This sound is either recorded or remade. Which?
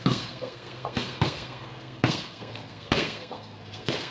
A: remade